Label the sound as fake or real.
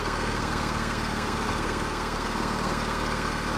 fake